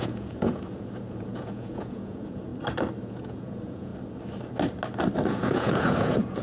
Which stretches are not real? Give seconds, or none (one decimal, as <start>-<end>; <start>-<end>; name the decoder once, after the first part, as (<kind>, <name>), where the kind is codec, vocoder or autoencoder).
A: 0.0-2.5 (vocoder, Vocos); 3.0-3.9; 5.3-6.4